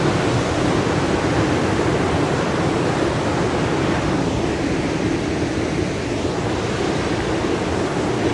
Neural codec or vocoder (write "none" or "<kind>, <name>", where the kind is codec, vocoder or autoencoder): none